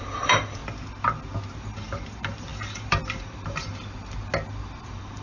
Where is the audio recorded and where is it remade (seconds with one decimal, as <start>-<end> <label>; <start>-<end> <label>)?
0.0-0.6 remade; 0.6-1.6 recorded; 1.6-3.7 remade; 3.7-4.8 recorded; 4.8-5.2 remade